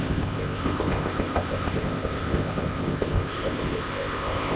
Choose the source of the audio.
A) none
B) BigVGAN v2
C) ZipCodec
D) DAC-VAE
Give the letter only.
C